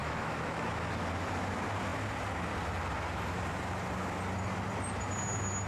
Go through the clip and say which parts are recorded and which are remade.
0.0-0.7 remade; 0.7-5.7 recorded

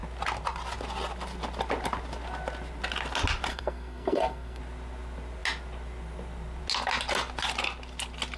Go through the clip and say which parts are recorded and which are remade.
0.0-3.5 recorded; 3.5-4.6 remade; 4.6-8.4 recorded

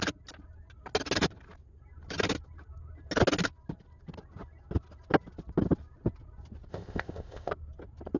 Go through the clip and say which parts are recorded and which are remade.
0.0-6.7 recorded; 6.7-7.5 remade; 7.5-8.2 recorded

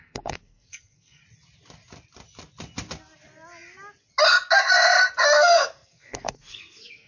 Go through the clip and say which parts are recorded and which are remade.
0.0-1.2 remade; 1.2-5.4 recorded; 5.4-7.1 remade

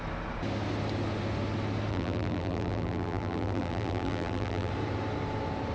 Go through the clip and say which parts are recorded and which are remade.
0.0-1.9 recorded; 1.9-4.7 remade; 4.7-5.7 recorded